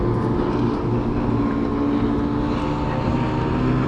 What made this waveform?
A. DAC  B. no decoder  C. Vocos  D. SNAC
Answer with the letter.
B